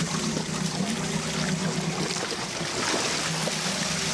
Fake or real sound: real